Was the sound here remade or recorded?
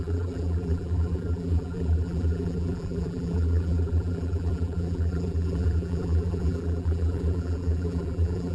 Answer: remade